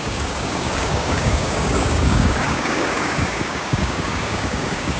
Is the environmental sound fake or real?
fake